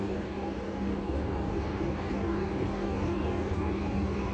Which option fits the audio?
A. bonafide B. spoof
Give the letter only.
B